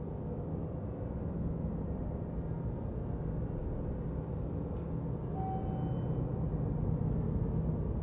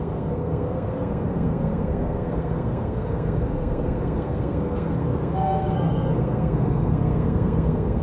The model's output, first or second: second